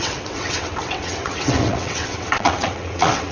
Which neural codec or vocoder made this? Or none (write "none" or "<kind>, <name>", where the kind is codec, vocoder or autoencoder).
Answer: vocoder, WaveNeXt